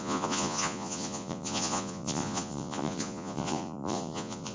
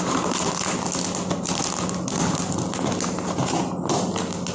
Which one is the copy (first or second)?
first